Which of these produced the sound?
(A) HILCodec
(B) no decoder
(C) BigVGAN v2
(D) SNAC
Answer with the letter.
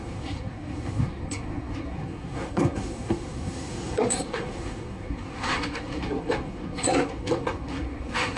D